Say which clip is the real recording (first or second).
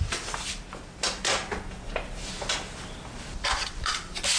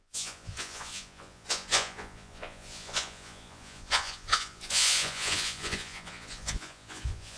first